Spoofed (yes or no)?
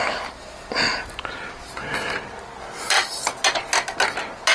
no